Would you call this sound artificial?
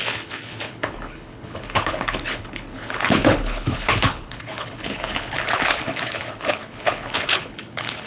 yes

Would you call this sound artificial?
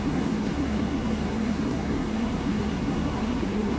yes